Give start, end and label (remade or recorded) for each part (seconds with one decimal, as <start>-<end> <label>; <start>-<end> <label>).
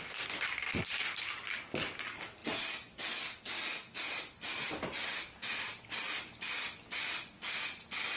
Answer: 0.0-8.2 recorded